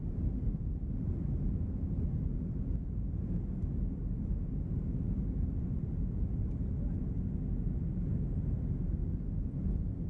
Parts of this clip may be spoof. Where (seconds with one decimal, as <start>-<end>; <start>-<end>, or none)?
none